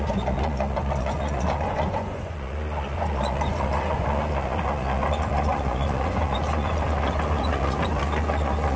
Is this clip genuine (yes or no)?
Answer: no